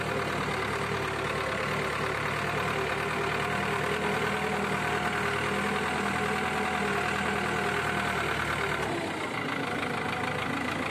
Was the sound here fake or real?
real